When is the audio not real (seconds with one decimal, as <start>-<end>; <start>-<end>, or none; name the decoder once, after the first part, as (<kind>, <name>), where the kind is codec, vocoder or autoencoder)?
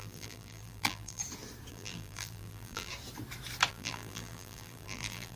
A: 0.0-1.2 (vocoder, BigVGAN v2); 1.7-2.9; 3.7-5.4